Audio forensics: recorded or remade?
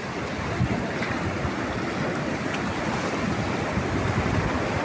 recorded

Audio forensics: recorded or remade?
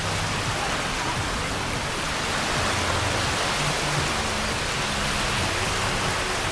recorded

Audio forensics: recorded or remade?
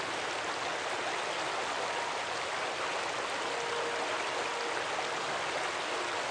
recorded